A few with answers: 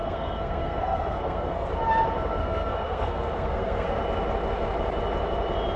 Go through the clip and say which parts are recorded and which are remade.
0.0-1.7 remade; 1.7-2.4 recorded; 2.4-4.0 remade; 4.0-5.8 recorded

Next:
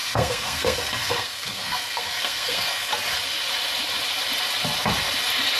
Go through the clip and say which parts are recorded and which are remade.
0.0-2.9 remade; 2.9-5.6 recorded

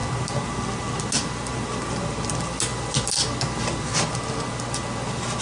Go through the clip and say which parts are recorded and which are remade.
0.0-5.4 recorded

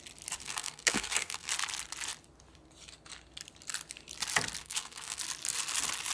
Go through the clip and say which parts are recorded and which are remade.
0.0-0.4 recorded; 0.4-1.5 remade; 1.5-4.6 recorded; 4.6-5.2 remade; 5.2-6.1 recorded

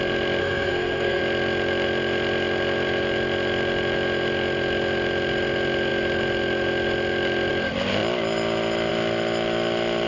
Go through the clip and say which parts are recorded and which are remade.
0.0-0.4 recorded; 0.4-1.2 remade; 1.2-10.1 recorded